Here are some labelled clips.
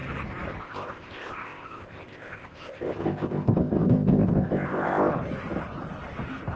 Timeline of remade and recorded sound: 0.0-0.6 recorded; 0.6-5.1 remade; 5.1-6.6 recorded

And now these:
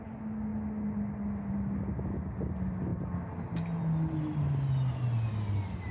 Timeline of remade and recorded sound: 0.0-5.9 recorded

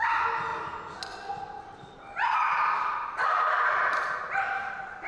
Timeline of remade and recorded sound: 0.0-5.1 recorded